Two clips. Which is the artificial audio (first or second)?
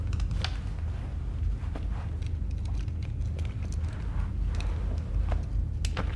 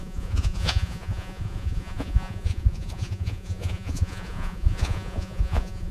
second